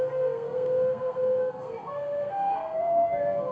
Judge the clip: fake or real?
fake